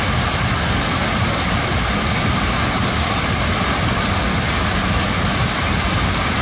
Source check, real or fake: real